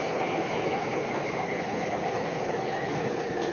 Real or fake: fake